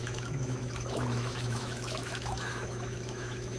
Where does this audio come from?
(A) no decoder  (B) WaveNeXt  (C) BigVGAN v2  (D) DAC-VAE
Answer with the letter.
D